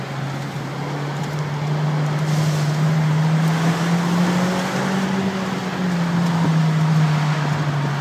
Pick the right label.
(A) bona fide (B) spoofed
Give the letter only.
A